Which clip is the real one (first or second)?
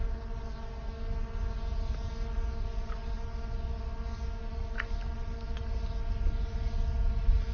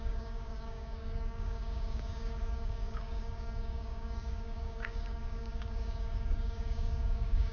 first